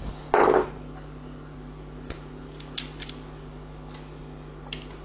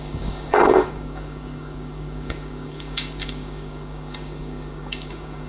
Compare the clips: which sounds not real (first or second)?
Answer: second